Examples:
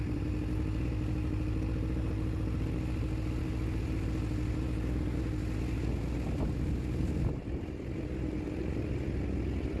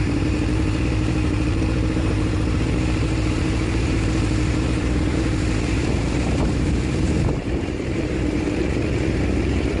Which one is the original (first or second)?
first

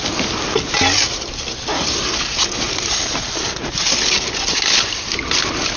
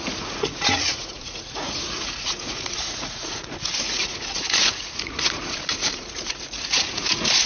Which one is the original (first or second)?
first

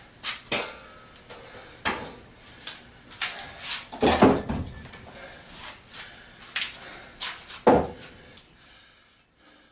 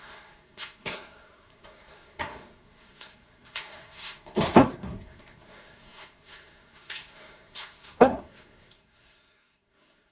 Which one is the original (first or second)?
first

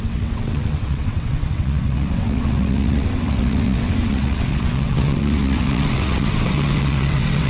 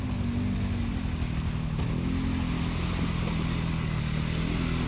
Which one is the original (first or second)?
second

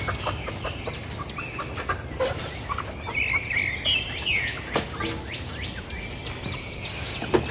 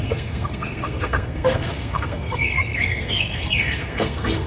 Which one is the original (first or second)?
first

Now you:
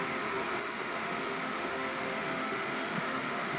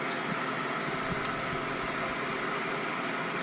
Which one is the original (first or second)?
second